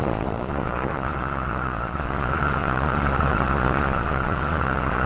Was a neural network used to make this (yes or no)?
yes